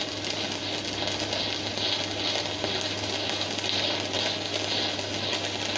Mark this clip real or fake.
real